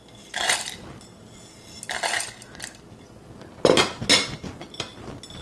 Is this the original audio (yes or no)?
yes